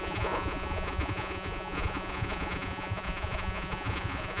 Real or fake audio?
fake